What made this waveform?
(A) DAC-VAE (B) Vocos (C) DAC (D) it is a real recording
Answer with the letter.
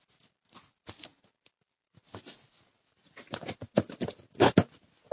D